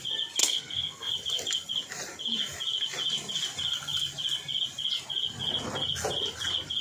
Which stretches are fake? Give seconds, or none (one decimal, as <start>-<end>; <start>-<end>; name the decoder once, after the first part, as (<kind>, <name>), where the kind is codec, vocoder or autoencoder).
0.4-1.1 (codec, SNAC)